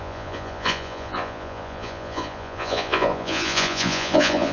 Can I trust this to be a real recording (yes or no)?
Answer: no